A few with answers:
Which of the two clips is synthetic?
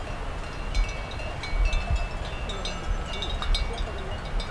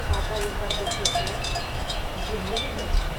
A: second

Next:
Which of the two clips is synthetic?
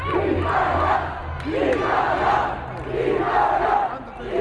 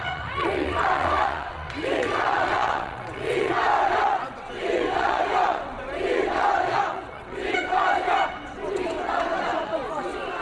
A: second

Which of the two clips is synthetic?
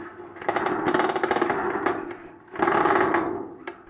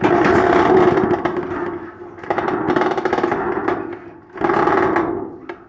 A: first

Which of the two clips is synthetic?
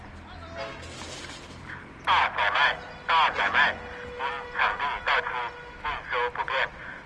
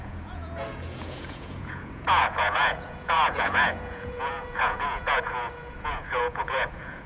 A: second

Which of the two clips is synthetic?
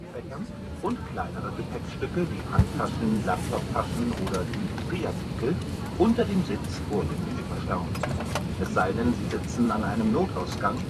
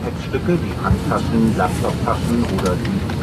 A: first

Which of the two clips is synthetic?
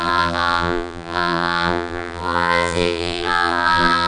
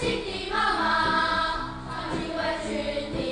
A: first